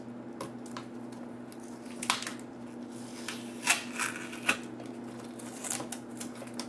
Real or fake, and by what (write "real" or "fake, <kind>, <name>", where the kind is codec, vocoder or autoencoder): real